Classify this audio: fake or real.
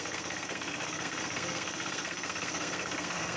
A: fake